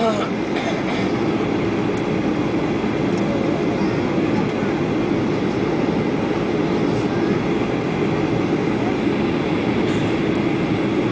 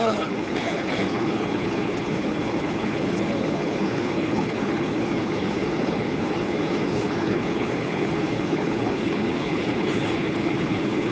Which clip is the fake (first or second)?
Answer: second